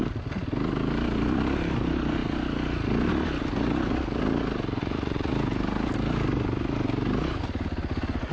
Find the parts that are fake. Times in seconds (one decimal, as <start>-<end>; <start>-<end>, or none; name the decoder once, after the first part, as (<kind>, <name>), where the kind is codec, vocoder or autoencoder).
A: 4.8-5.3 (vocoder, Vocos)